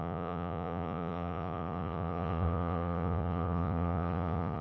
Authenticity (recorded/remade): remade